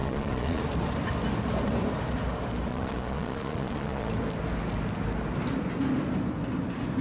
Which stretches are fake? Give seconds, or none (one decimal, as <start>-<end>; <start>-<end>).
0.0-0.6; 2.7-4.1